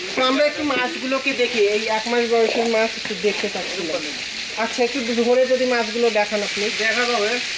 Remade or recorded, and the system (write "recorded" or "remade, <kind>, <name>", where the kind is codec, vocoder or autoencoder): recorded